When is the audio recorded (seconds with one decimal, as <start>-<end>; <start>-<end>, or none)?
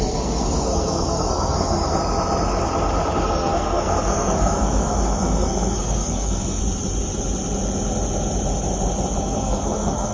2.0-3.2; 6.6-9.2